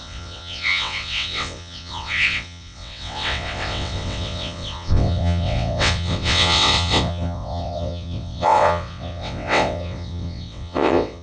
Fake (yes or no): yes